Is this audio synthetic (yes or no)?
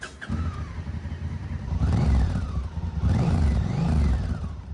yes